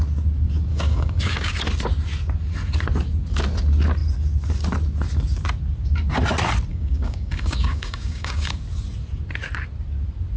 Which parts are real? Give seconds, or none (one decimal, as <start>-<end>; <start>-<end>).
0.0-0.7; 1.6-6.7; 8.6-10.4